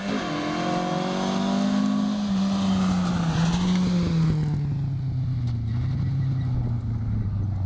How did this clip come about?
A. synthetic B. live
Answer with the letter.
B